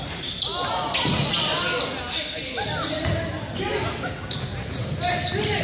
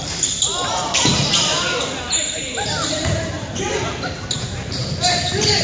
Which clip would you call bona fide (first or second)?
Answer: first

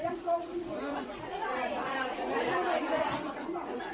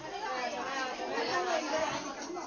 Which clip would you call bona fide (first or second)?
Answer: second